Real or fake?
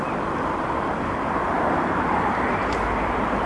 real